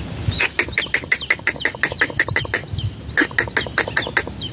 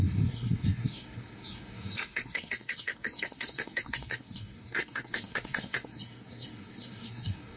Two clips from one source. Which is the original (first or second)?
first